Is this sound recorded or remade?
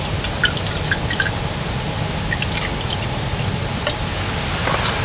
recorded